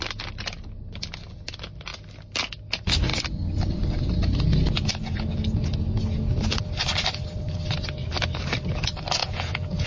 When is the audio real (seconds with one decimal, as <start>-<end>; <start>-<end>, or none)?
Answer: 0.0-9.2